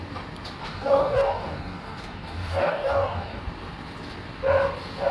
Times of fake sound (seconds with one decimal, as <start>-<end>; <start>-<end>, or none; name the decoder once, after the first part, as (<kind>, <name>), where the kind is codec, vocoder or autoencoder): 0.6-3.4 (codec, DAC)